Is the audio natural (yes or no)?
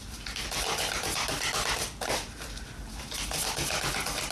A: yes